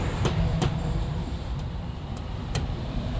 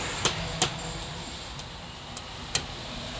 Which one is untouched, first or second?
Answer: second